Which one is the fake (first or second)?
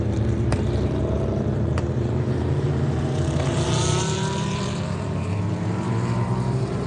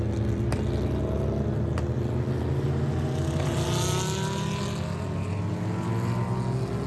first